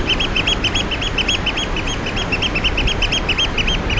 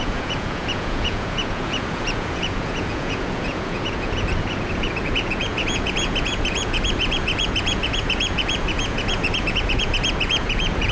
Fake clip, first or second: second